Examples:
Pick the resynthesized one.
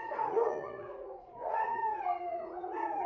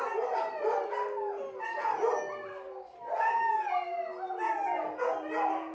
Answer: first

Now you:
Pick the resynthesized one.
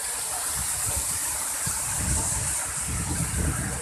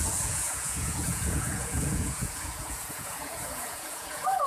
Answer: second